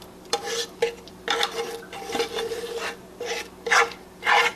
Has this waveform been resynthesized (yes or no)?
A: yes